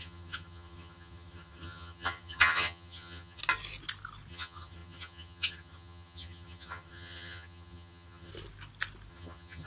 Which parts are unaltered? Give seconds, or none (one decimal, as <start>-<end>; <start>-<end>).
3.4-4.3; 8.3-9.1